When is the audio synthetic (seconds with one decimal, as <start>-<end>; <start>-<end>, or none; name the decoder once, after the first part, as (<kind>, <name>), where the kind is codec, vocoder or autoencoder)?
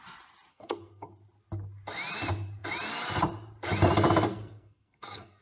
0.5-1.1 (codec, SNAC); 4.3-5.4